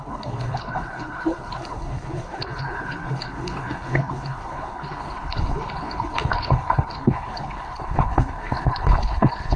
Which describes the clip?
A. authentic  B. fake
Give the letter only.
B